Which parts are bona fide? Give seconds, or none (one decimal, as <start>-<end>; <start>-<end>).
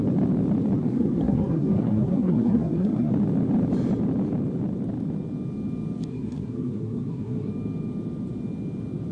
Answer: 0.0-0.8; 3.1-6.1; 7.5-9.1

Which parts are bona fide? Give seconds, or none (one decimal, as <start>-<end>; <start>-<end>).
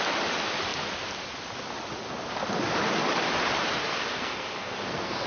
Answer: 0.0-3.9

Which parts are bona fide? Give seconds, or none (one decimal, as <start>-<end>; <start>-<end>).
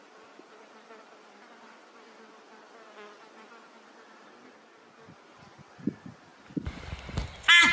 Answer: 0.0-7.7